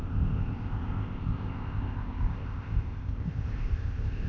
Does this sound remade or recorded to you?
remade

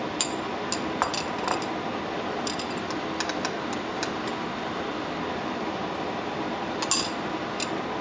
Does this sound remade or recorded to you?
recorded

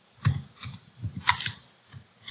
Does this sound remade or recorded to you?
recorded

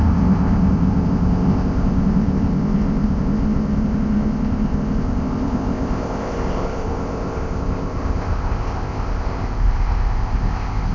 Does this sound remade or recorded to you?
remade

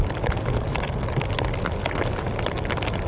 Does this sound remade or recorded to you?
recorded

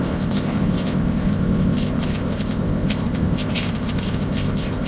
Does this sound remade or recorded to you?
remade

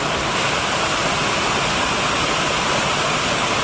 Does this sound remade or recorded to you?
recorded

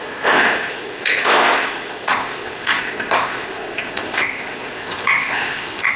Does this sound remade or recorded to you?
remade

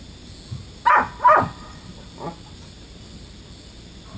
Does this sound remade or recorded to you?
recorded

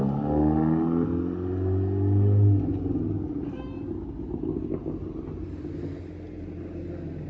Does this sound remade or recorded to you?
recorded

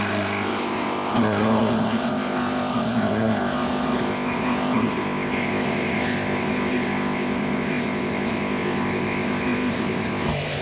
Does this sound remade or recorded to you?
remade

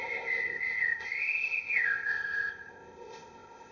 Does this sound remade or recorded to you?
remade